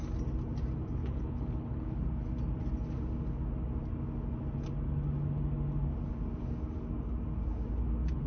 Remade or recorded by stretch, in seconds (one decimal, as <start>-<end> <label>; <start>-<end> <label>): 0.0-1.0 recorded; 1.0-2.0 remade; 2.0-8.3 recorded